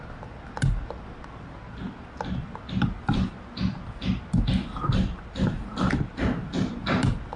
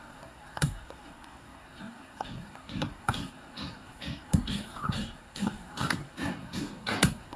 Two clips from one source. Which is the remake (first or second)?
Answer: second